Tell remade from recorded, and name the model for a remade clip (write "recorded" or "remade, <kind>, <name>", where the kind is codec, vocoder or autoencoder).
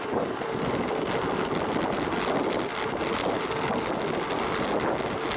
recorded